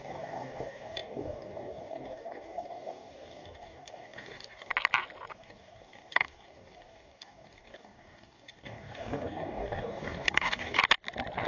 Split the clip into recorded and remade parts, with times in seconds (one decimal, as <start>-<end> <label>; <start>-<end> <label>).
0.0-4.7 remade; 4.7-5.3 recorded; 5.3-10.8 remade; 10.8-11.5 recorded